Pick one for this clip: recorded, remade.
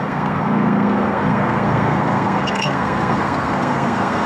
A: remade